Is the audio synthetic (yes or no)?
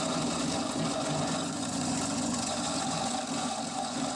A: yes